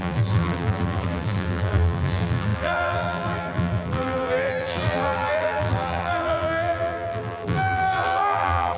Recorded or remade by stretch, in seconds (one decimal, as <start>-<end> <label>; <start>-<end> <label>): 0.0-8.8 remade